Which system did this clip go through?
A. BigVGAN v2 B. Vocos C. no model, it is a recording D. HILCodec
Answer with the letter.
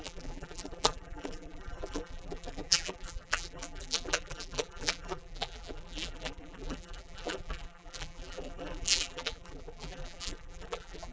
A